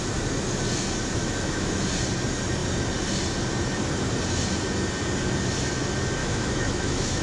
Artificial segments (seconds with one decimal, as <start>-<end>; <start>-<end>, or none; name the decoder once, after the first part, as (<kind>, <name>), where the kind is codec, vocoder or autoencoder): 1.2-1.8 (autoencoder, DAC-VAE); 6.2-7.2